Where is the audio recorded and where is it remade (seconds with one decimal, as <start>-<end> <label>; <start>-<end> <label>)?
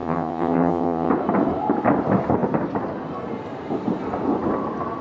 0.0-1.1 remade; 1.1-5.0 recorded